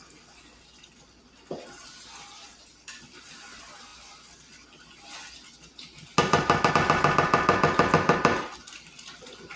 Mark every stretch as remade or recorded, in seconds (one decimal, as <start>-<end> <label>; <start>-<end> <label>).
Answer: 0.0-9.6 recorded